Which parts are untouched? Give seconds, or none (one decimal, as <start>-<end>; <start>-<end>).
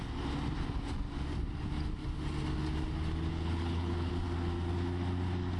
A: 0.0-3.3; 4.1-5.6